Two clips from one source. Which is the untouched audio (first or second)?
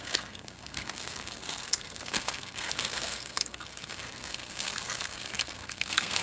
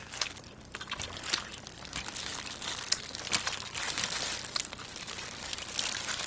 second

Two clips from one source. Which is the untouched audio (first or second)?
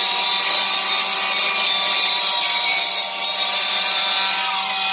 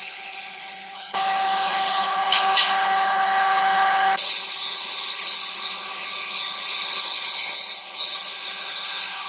first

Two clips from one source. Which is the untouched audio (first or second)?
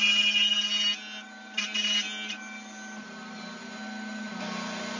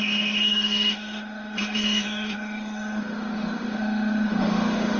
first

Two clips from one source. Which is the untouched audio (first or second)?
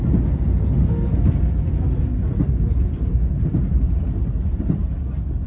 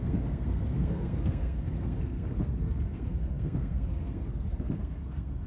first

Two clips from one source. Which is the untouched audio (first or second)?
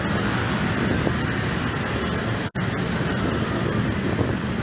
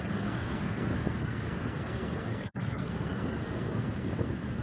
first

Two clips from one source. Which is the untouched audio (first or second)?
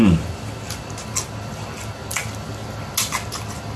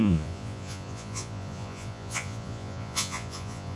first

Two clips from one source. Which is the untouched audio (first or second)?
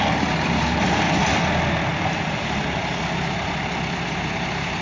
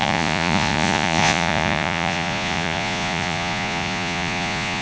first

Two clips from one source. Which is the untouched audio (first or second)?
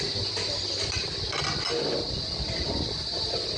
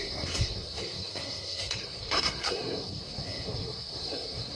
first